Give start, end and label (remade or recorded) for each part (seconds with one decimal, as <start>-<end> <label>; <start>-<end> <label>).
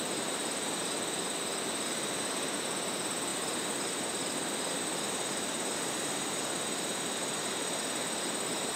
0.0-8.8 recorded